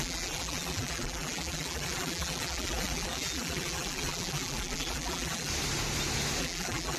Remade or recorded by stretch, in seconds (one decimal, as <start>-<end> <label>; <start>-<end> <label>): 0.0-5.5 remade; 5.5-6.4 recorded; 6.4-7.0 remade